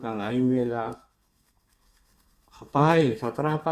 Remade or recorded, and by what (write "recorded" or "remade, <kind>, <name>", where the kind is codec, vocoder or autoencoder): remade, codec, SNAC